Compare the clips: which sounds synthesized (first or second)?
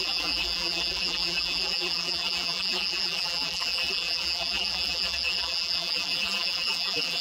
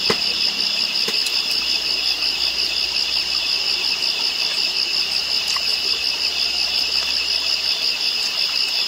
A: first